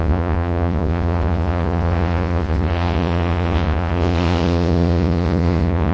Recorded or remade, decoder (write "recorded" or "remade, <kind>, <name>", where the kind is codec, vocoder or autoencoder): remade, vocoder, Vocos